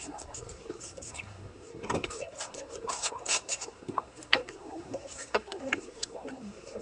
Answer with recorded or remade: remade